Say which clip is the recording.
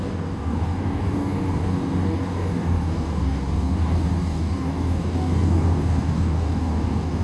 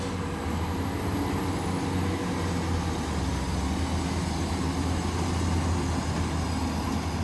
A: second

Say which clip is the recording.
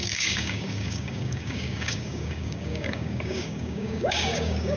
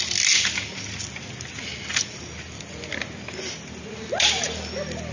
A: second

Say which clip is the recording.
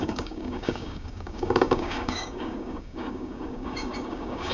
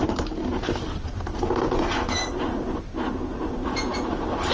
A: second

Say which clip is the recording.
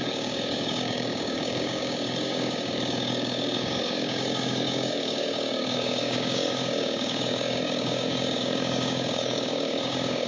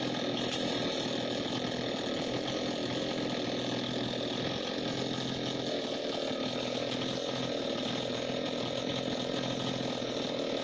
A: second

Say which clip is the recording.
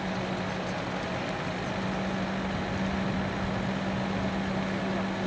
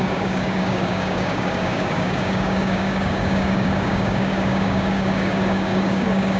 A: first